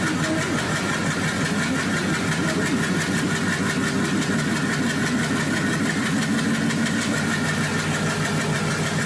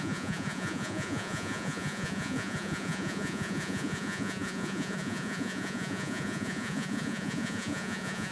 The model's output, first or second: second